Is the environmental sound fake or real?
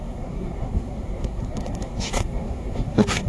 fake